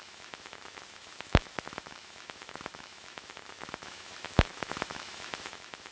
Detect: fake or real fake